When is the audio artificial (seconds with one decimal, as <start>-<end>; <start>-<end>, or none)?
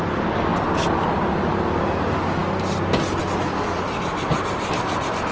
none